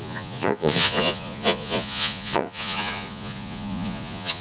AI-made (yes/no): yes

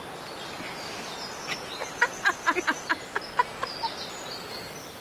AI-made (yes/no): no